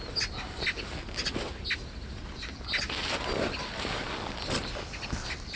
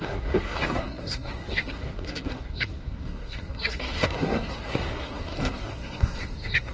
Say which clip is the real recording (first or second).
first